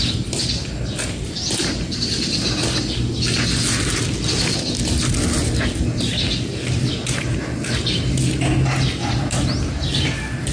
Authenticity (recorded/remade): recorded